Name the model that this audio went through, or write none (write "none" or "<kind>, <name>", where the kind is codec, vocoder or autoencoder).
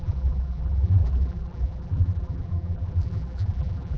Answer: vocoder, BigVGAN v2